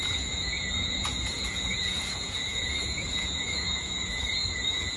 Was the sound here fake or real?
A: fake